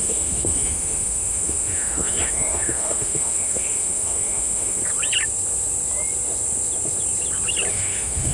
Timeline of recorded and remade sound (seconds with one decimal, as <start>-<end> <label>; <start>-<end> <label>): 0.0-4.8 remade; 4.8-7.7 recorded; 7.7-8.3 remade